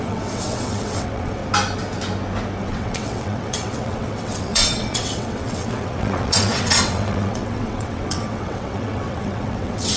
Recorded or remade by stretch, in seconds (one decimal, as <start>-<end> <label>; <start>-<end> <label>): 0.0-1.4 remade; 1.4-2.6 recorded; 2.6-10.0 remade